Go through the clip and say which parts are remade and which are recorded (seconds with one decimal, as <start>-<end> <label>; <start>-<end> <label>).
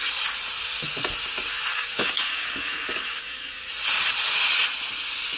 0.0-1.7 recorded; 1.7-3.7 remade; 3.7-5.4 recorded